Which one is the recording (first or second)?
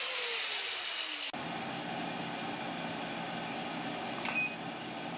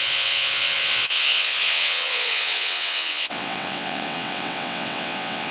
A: first